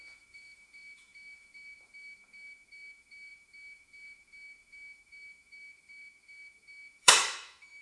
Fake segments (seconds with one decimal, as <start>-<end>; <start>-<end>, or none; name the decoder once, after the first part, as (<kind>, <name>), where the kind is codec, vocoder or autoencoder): 0.0-7.8 (autoencoder, DAC-VAE)